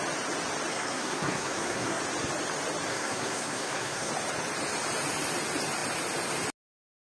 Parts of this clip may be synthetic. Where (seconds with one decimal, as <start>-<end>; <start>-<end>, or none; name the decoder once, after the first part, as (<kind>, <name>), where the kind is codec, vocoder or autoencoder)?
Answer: 0.7-2.0 (codec, SNAC); 2.9-4.1